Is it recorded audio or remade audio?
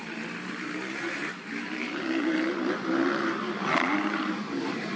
remade